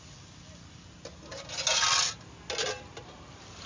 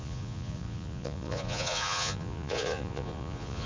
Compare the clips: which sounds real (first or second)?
first